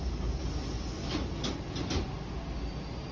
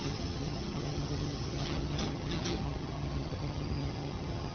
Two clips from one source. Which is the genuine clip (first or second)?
first